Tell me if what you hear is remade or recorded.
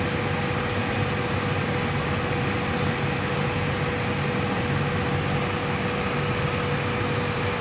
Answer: recorded